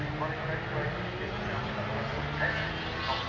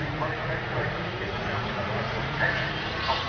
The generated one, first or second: second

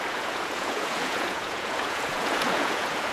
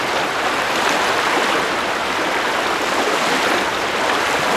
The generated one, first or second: first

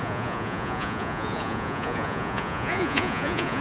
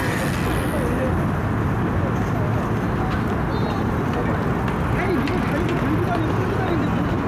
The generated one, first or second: first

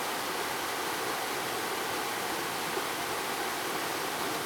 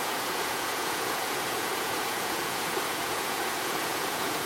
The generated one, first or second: second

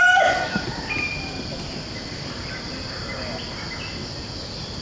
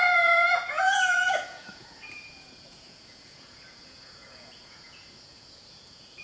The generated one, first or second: second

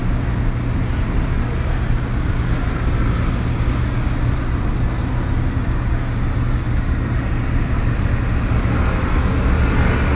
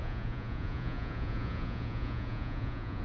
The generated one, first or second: second